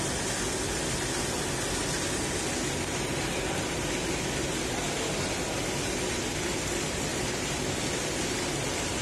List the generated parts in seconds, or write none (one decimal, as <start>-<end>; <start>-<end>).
none